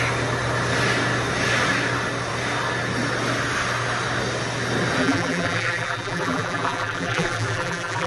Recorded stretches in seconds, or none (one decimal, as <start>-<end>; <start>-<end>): 0.0-5.0